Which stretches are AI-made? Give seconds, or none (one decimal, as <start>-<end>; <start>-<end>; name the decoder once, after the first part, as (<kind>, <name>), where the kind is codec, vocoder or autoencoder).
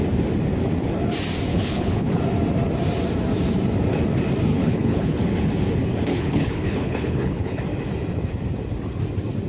1.5-2.2 (codec, HILCodec); 4.5-5.2; 6.1-7.6